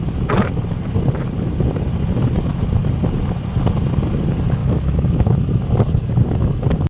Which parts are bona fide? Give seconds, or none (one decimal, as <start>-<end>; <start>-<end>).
0.0-4.6; 5.3-6.9